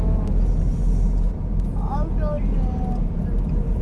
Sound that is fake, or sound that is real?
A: real